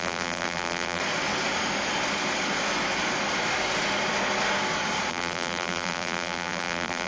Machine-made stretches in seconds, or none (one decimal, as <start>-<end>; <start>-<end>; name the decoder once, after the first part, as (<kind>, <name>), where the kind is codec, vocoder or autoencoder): 0.0-1.0 (vocoder, BigVGAN v2); 5.1-7.1